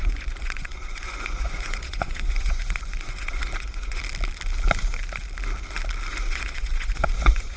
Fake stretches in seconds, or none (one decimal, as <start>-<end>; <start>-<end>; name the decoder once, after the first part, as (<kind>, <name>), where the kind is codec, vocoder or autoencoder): 0.0-4.0 (vocoder, Vocos); 6.1-7.6